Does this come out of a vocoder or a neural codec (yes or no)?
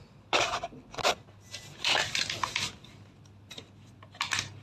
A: no